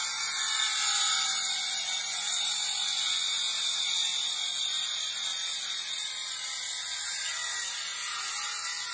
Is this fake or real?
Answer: real